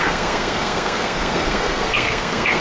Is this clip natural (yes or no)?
no